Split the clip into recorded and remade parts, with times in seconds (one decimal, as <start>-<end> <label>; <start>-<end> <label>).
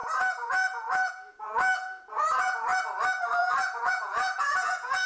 0.0-2.7 remade; 2.7-3.4 recorded; 3.4-5.1 remade